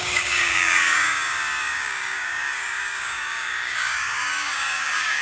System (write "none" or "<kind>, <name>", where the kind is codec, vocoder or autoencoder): codec, DAC